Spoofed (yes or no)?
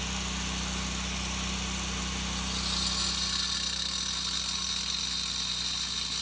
no